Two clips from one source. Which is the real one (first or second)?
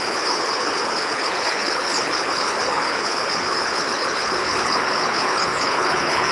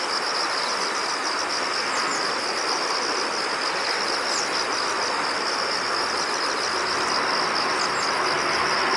second